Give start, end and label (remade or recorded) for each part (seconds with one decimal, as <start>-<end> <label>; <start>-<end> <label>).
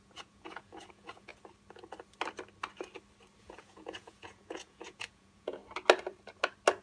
0.0-1.3 remade; 1.3-3.4 recorded; 3.4-5.6 remade; 5.6-6.8 recorded